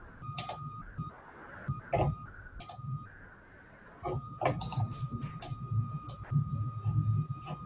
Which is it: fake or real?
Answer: real